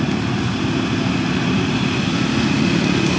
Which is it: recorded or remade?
recorded